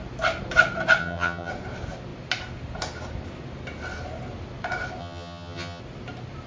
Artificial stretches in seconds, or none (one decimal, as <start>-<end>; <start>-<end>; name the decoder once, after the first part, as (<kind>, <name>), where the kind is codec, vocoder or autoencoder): 1.0-1.5 (vocoder, HiFi-GAN); 5.0-5.8